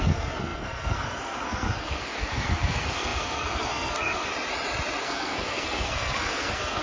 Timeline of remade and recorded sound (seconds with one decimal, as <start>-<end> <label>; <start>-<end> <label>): 0.0-4.3 remade; 4.3-5.0 recorded; 5.0-6.8 remade